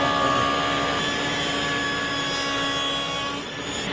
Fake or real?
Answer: real